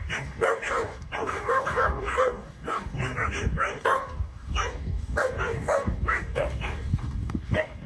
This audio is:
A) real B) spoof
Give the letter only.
B